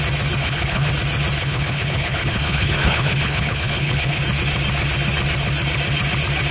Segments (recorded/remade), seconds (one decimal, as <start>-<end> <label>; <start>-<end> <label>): 0.0-0.4 recorded; 0.4-0.9 remade; 0.9-1.4 recorded; 1.4-4.2 remade; 4.2-6.5 recorded